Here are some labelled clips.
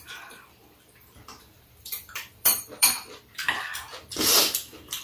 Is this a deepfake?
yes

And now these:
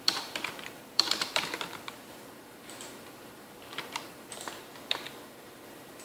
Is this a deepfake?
yes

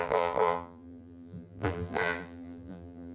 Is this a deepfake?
yes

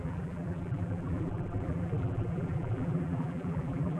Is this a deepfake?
yes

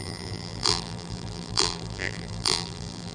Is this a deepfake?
yes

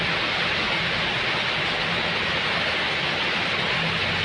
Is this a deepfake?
no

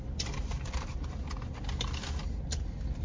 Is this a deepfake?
no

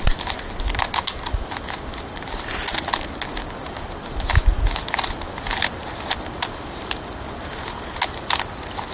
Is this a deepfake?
no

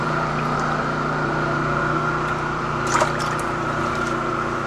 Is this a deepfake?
yes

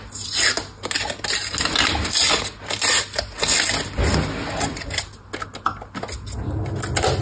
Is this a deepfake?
no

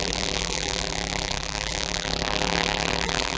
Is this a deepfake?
yes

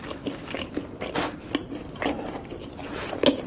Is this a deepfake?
no